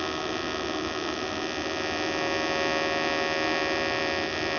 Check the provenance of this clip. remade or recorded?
recorded